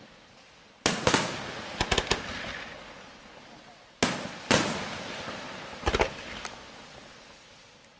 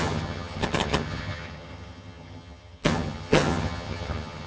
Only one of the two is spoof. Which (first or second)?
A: second